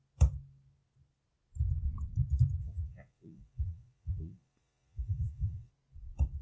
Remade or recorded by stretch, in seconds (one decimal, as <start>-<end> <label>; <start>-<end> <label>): 0.0-2.6 recorded; 2.6-5.7 remade; 5.7-6.4 recorded